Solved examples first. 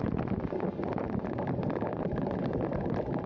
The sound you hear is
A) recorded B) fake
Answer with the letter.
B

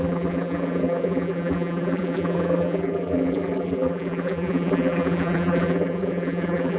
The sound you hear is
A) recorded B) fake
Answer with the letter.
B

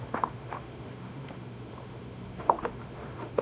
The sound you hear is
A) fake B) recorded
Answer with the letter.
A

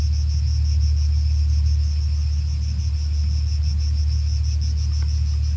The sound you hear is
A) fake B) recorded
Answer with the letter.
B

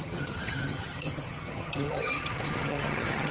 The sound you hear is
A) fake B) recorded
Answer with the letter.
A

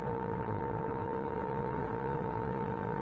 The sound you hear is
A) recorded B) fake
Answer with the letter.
B